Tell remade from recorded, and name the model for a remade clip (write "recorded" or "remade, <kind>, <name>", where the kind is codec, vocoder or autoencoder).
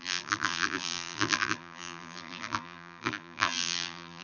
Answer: remade, vocoder, BigVGAN v2